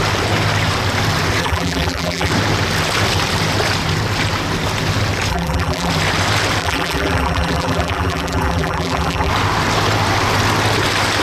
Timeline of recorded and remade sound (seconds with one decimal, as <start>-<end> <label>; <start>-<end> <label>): 0.0-1.4 recorded; 1.4-2.3 remade; 2.3-5.3 recorded; 5.3-5.9 remade; 5.9-6.6 recorded; 6.6-9.3 remade; 9.3-11.2 recorded